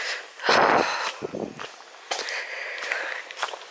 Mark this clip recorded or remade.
recorded